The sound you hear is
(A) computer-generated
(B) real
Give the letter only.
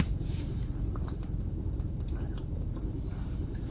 A